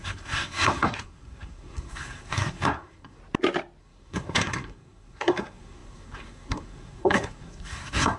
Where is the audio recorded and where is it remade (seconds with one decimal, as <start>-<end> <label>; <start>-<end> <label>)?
0.0-3.2 remade; 3.2-3.8 recorded; 3.8-8.2 remade